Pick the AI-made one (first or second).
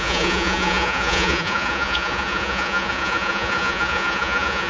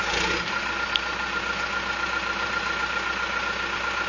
first